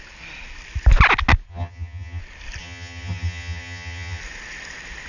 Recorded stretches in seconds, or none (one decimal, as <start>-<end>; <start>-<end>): 0.0-1.5; 2.2-2.6; 4.2-5.1